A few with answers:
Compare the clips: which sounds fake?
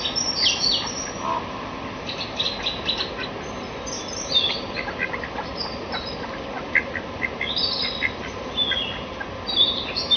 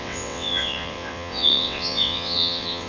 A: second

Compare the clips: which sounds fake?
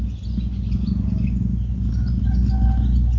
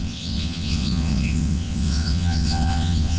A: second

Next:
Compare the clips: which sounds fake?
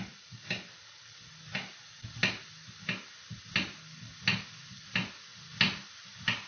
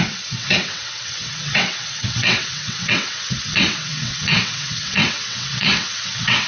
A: second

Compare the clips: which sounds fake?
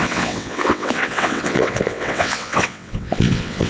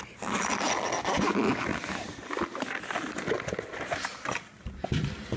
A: first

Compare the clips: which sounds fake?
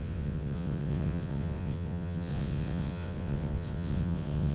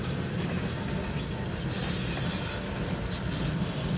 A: first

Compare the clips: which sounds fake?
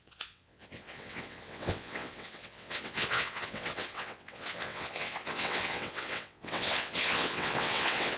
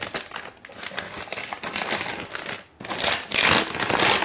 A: first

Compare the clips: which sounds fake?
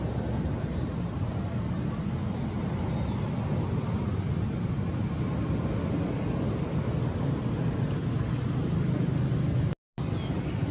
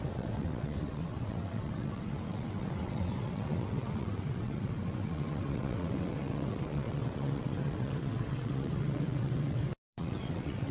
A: second